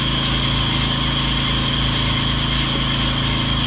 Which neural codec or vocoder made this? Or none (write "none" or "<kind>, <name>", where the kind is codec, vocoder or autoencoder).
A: none